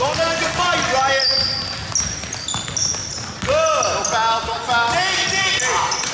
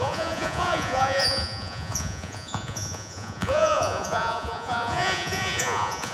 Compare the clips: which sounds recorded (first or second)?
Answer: first